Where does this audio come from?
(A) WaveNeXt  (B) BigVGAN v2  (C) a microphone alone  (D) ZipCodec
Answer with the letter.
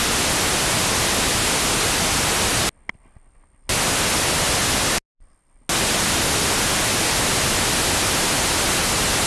C